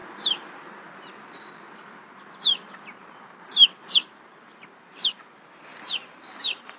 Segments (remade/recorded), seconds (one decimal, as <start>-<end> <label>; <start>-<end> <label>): 0.0-0.7 remade; 0.7-2.5 recorded; 2.5-6.8 remade